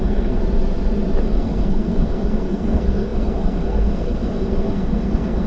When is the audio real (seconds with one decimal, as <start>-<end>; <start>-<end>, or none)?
0.4-1.2